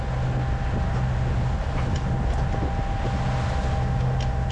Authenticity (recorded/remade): recorded